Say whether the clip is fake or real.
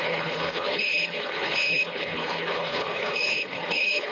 fake